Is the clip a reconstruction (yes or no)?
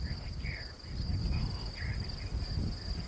no